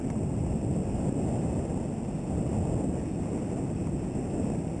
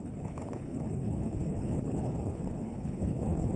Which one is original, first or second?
first